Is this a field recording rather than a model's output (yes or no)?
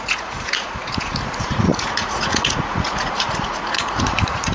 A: no